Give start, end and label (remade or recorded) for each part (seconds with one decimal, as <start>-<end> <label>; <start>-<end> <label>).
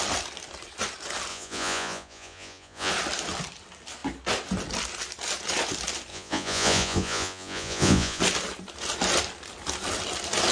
0.0-1.3 recorded; 1.3-2.9 remade; 2.9-6.1 recorded; 6.1-8.2 remade; 8.2-10.5 recorded